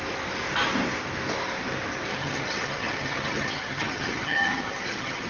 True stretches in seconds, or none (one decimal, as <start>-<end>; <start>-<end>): 0.0-2.1